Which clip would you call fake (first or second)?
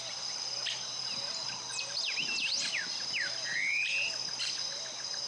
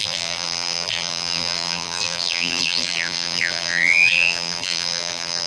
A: second